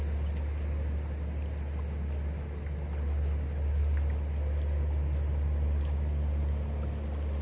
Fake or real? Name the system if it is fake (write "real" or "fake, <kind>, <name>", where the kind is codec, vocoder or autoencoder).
real